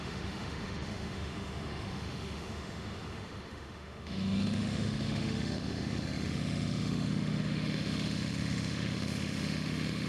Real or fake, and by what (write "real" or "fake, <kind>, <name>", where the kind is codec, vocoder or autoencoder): fake, autoencoder, DAC-VAE